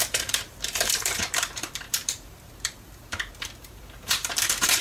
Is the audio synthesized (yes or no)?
yes